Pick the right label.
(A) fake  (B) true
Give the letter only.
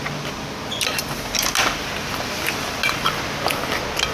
B